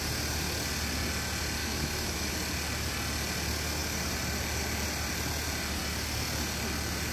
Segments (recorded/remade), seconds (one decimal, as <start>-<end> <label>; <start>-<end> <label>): 0.0-1.6 recorded; 1.6-2.3 remade; 2.3-7.1 recorded

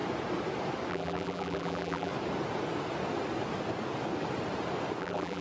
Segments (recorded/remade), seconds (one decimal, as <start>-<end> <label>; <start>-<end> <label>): 0.0-0.9 recorded; 0.9-2.1 remade; 2.1-5.0 recorded; 5.0-5.4 remade

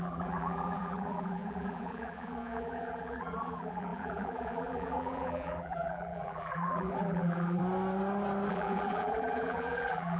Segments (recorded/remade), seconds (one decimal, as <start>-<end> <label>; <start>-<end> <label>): 0.0-7.6 remade; 7.6-8.5 recorded; 8.5-10.2 remade

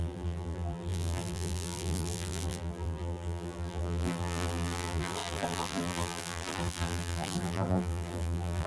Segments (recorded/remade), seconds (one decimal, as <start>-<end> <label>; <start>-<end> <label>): 0.0-8.7 remade

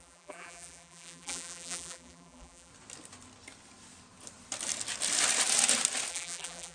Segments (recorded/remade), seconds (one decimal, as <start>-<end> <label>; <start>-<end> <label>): 0.0-2.7 remade; 2.7-6.1 recorded; 6.1-6.7 remade

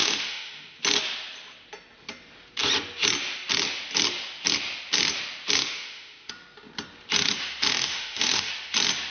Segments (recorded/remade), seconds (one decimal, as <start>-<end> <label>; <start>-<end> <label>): 0.0-0.8 remade; 0.8-5.6 recorded; 5.6-6.3 remade; 6.3-7.7 recorded; 7.7-8.5 remade; 8.5-9.1 recorded

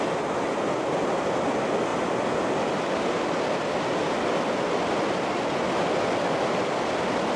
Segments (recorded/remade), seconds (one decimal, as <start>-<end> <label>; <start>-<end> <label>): 0.0-7.4 recorded